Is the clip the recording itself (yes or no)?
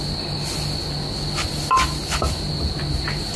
yes